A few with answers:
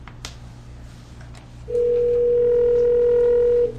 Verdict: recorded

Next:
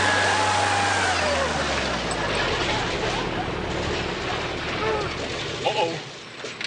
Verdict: recorded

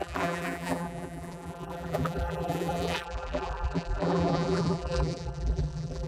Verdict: remade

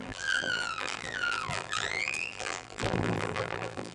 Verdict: remade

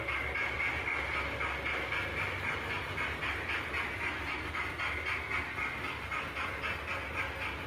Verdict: recorded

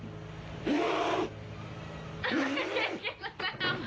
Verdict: recorded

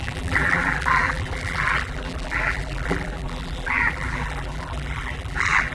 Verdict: remade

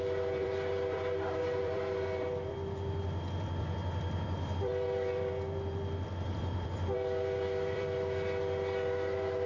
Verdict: remade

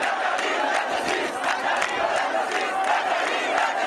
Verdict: recorded